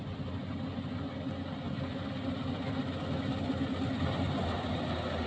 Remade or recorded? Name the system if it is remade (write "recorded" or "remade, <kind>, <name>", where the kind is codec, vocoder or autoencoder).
recorded